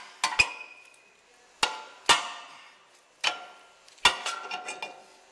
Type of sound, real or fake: real